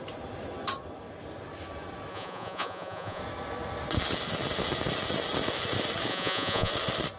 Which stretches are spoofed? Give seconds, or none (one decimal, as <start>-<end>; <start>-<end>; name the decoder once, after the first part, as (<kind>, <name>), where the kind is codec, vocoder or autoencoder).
2.1-3.2 (vocoder, Vocos); 6.1-6.7